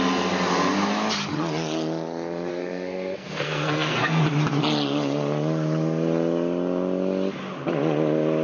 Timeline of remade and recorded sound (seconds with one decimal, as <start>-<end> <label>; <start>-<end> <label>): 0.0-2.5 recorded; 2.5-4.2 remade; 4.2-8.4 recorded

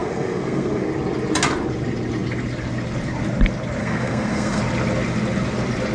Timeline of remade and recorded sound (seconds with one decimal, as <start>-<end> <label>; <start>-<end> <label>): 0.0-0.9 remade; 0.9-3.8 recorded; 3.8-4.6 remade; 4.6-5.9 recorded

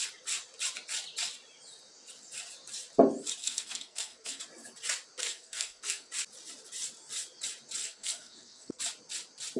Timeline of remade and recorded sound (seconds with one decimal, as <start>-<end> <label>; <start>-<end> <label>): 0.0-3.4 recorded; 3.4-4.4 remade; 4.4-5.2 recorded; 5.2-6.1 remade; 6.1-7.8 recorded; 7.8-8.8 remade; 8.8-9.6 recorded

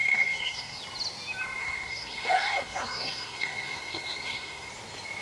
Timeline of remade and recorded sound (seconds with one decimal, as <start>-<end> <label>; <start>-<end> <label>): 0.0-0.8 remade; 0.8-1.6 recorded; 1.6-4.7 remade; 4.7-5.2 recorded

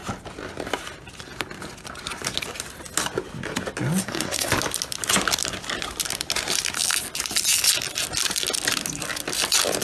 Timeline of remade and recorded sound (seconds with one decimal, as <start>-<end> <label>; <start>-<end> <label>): 0.0-4.0 recorded; 4.0-4.5 remade; 4.5-9.8 recorded

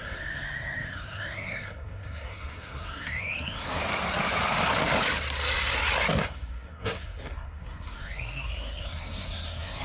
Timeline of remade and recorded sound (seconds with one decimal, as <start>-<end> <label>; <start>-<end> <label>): 0.0-3.8 remade; 3.8-6.2 recorded; 6.2-9.8 remade